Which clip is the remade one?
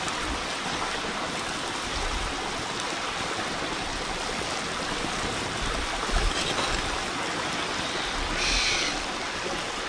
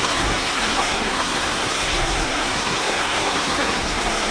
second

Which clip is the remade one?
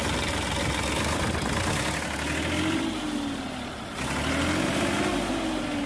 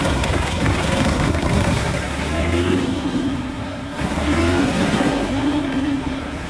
second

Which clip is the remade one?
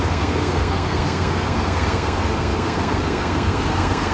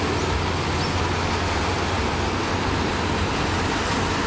first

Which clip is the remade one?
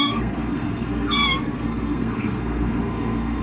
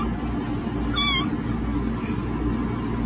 first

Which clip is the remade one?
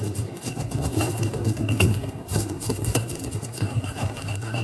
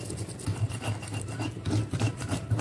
first